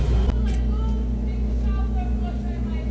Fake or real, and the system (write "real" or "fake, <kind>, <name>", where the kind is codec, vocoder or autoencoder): real